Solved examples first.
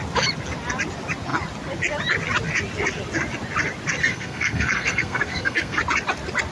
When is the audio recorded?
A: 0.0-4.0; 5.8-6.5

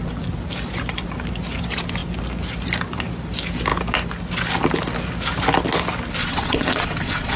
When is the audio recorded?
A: 0.0-6.2

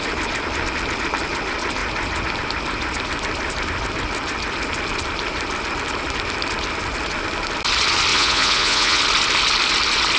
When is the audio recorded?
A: 0.0-8.1; 9.0-10.2

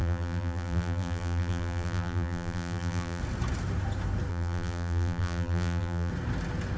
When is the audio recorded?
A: 3.2-4.3; 6.1-6.8

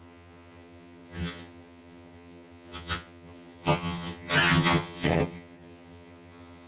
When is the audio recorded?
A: none

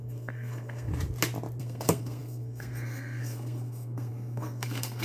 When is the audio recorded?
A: 0.9-1.6

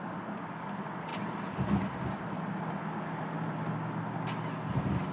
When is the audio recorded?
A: 0.0-5.1

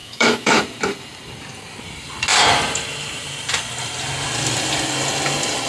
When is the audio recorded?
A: 0.6-5.7